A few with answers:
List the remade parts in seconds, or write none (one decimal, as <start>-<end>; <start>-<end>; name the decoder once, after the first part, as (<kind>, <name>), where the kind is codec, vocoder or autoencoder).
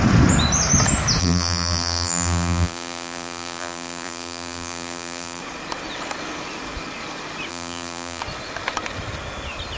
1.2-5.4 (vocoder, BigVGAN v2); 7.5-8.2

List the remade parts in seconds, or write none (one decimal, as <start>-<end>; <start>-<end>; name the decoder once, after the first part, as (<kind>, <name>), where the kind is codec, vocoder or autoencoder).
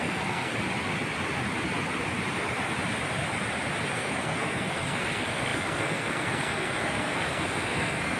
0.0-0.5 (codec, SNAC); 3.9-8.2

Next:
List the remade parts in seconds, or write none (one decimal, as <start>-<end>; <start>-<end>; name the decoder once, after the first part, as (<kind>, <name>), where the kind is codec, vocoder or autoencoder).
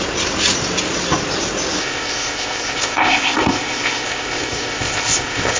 1.8-5.6 (codec, ZipCodec)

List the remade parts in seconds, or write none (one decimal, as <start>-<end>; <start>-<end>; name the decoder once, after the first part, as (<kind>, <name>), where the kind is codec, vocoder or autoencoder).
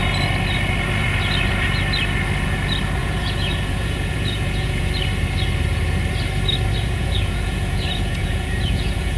3.0-4.9 (vocoder, Vocos); 6.8-9.2